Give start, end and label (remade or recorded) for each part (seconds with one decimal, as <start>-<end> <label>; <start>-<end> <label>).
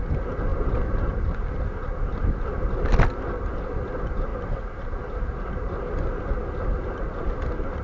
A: 0.0-7.8 recorded